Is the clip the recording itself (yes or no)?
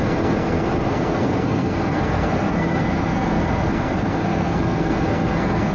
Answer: no